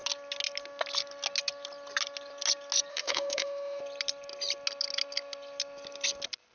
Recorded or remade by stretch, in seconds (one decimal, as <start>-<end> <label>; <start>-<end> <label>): 0.0-2.9 recorded; 2.9-3.8 remade; 3.8-6.5 recorded